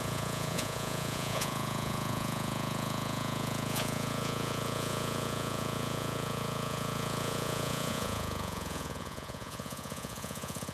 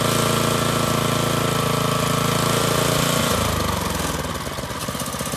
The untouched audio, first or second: second